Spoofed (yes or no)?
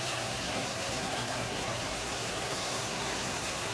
yes